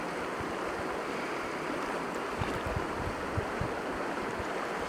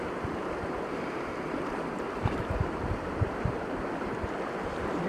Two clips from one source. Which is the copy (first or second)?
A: second